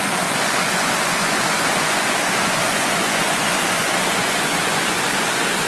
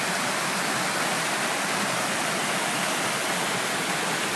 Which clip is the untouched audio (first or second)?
second